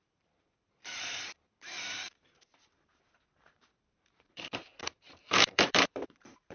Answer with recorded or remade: remade